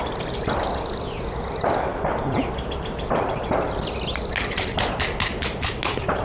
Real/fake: real